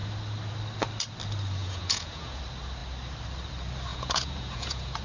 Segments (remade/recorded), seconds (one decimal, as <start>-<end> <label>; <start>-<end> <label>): 0.0-1.6 recorded; 1.6-2.4 remade; 2.4-3.9 recorded; 3.9-5.0 remade